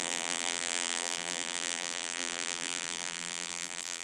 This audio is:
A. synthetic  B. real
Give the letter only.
A